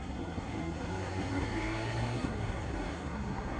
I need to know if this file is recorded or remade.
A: remade